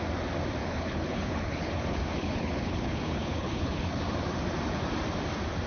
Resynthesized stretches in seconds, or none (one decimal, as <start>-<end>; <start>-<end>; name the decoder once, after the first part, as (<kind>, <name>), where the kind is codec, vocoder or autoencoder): 0.6-4.0 (codec, HILCodec)